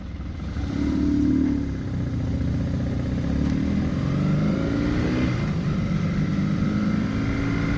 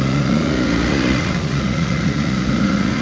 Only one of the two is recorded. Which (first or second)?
first